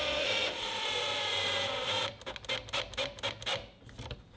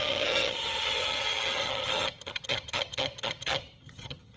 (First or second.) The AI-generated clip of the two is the second